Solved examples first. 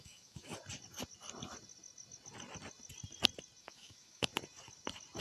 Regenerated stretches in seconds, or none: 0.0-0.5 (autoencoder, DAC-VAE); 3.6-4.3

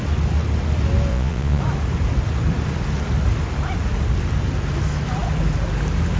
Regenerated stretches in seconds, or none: 1.1-1.6 (vocoder, Vocos)

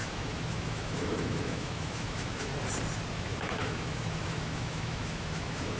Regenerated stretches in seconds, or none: 0.0-2.5 (autoencoder, DAC-VAE); 3.1-5.8

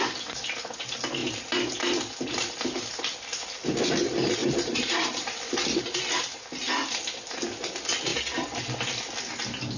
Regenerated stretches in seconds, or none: 1.2-1.8 (vocoder, BigVGAN v2); 4.4-6.2